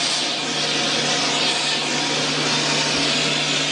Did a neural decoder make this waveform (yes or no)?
no